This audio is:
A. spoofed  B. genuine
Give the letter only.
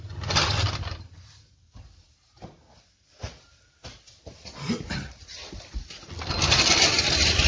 B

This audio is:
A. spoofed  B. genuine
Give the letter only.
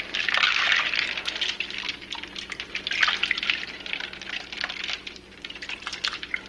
B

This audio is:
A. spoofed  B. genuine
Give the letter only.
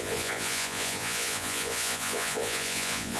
A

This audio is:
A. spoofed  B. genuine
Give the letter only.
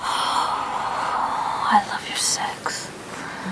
B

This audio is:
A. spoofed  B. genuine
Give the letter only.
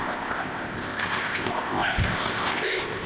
A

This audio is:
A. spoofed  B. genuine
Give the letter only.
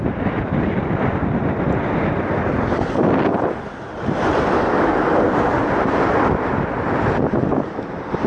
A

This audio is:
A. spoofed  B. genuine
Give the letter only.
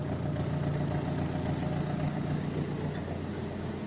B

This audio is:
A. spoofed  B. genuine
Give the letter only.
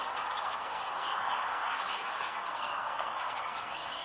A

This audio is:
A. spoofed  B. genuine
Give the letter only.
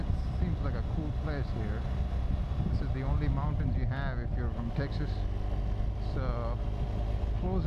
B